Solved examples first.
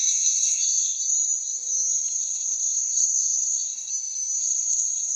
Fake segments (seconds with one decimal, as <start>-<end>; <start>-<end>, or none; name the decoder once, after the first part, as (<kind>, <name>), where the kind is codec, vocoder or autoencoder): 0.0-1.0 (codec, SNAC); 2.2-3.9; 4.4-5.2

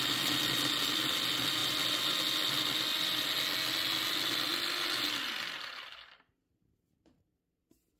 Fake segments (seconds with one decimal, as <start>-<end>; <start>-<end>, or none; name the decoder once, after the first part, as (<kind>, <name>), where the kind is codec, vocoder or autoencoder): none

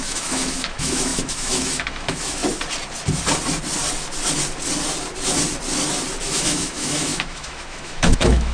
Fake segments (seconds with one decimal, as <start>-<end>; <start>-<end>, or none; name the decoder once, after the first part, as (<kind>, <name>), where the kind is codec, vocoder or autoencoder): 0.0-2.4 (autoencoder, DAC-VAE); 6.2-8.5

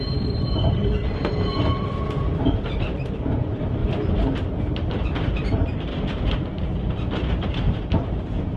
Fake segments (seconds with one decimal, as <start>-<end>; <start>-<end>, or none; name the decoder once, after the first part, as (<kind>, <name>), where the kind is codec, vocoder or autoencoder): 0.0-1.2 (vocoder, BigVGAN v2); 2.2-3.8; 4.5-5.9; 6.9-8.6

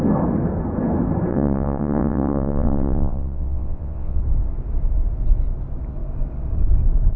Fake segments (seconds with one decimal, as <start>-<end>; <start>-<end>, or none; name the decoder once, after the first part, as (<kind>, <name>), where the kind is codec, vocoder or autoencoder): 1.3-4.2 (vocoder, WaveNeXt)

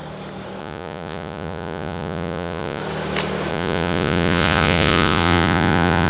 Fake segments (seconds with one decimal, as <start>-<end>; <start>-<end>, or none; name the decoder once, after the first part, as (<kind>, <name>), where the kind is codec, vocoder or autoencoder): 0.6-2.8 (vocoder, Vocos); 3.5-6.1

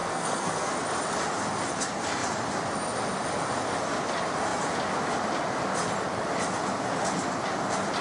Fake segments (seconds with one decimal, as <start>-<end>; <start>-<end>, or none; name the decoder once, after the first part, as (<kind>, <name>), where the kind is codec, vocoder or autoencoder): 0.0-0.7 (codec, SNAC)